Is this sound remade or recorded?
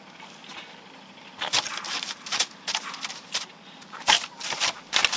recorded